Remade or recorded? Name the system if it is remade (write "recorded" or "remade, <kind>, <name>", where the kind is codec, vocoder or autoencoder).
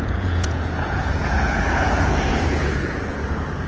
remade, vocoder, Vocos